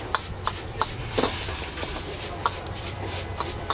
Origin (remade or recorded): recorded